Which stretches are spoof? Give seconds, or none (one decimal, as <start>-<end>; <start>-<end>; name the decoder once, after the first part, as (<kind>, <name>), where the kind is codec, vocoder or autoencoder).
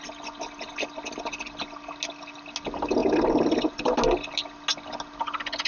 none